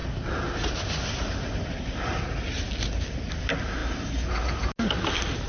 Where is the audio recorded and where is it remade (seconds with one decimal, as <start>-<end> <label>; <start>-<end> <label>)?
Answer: 0.0-5.5 recorded